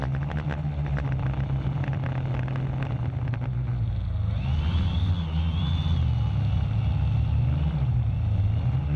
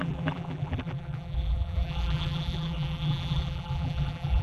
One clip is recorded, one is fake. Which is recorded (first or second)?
first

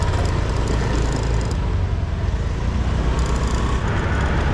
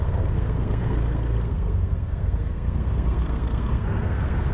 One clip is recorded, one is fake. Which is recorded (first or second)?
first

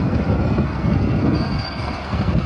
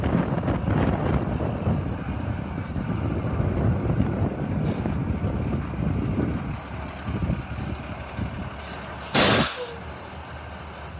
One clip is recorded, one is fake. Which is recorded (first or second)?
second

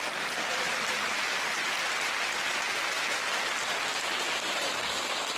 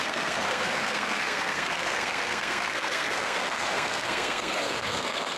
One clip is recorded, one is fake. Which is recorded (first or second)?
first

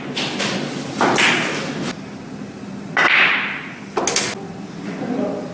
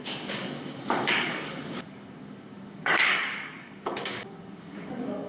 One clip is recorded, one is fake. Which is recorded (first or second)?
first